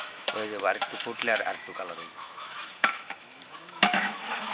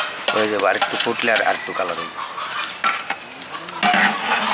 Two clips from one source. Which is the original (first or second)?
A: second